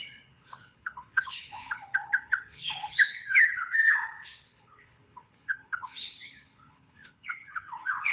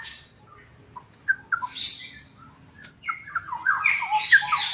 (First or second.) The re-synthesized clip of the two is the first